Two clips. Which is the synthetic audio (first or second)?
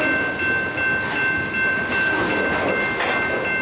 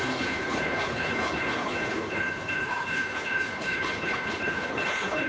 second